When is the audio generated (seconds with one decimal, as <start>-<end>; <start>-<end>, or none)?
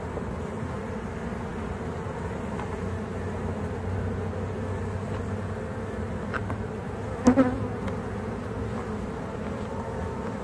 none